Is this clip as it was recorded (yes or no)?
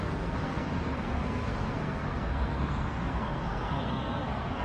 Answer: no